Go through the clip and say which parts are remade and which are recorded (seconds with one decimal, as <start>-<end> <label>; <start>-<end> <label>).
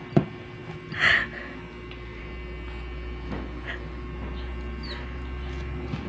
0.0-6.1 recorded